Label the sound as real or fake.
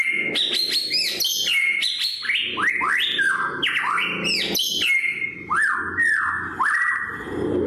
real